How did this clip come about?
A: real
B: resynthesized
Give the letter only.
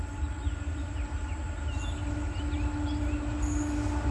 A